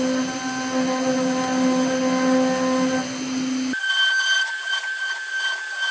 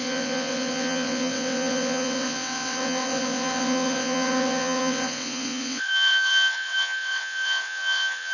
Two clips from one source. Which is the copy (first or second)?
second